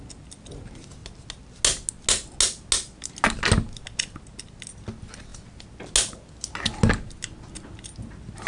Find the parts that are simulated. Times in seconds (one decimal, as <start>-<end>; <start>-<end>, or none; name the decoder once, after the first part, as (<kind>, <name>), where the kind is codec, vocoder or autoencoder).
none